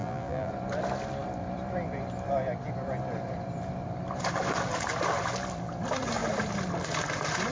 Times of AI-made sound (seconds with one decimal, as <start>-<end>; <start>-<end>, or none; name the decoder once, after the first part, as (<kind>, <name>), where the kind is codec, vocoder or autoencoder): 0.0-0.5 (vocoder, BigVGAN v2)

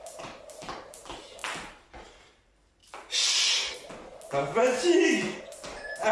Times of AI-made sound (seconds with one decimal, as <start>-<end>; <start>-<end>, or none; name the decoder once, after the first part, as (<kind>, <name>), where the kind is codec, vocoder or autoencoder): 0.0-1.4 (vocoder, BigVGAN v2); 2.2-2.8; 5.4-6.1

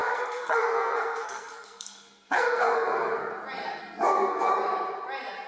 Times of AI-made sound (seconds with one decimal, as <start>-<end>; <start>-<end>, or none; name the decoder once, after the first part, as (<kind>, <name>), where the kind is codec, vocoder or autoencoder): 0.0-3.3 (codec, SNAC); 3.8-4.5